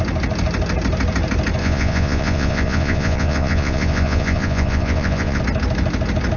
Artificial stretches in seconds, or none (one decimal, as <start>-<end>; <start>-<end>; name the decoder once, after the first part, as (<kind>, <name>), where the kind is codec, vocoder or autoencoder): 1.6-5.4 (vocoder, Vocos)